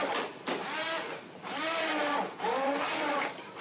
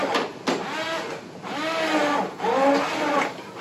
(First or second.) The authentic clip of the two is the second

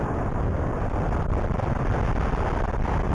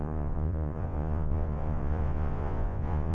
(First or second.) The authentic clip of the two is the first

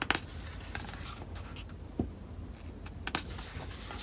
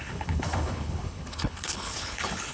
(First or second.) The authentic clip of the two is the first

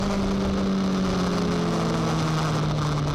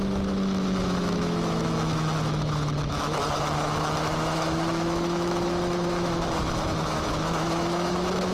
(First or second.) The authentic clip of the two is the first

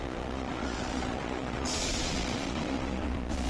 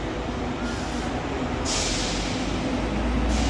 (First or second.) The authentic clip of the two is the second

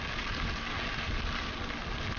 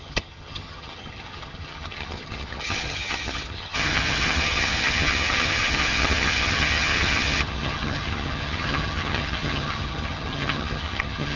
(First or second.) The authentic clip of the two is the first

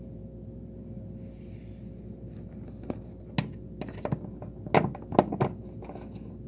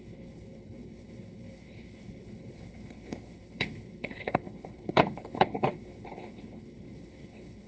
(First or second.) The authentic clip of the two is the first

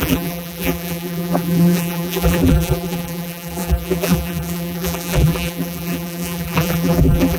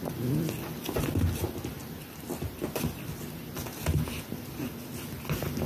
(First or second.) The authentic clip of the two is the second